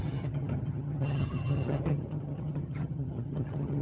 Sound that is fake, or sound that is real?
fake